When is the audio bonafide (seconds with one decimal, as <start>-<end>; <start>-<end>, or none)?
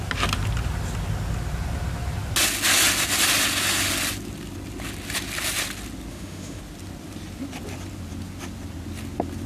0.0-6.1; 6.6-9.5